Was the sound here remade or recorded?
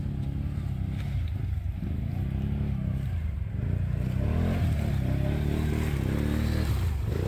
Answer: recorded